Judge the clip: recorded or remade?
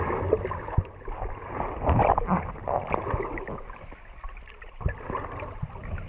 recorded